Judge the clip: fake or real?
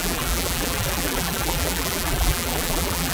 fake